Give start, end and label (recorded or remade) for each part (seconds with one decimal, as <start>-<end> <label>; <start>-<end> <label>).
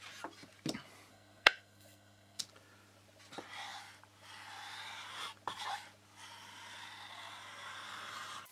0.0-1.1 recorded; 1.1-2.4 remade; 2.4-8.5 recorded